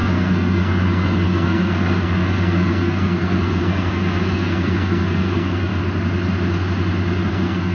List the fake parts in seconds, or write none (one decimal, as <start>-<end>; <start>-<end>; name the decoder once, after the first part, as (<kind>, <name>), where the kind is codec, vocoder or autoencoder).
0.0-5.7 (codec, SNAC); 7.3-7.7